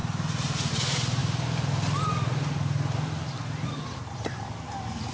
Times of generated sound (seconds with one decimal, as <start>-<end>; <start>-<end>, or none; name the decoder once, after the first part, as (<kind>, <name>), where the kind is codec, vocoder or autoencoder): none